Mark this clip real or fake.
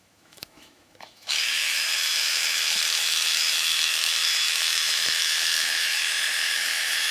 fake